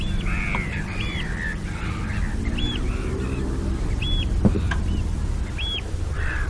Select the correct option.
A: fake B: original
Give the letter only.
B